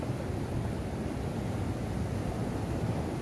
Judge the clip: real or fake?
real